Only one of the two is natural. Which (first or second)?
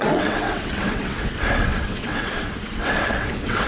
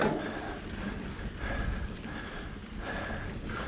second